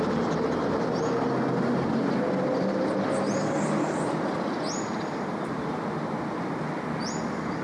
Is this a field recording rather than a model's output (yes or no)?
yes